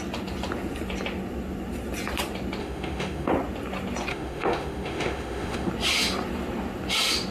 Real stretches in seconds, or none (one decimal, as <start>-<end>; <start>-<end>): 0.0-2.6; 3.3-4.1; 5.7-7.3